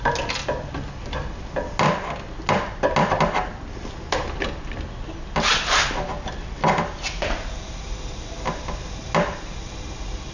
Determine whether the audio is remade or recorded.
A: recorded